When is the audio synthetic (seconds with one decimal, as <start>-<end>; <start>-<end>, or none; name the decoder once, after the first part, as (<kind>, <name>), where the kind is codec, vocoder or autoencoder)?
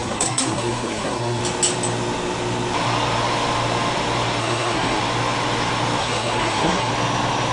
0.0-1.4 (codec, SNAC); 4.4-5.0; 6.0-6.9